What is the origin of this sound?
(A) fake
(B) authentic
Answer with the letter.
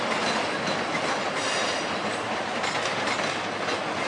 B